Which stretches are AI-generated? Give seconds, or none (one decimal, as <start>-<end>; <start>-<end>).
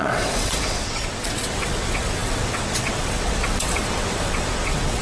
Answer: 0.0-5.0